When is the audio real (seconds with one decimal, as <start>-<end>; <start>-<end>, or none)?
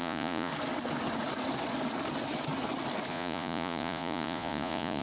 0.5-3.1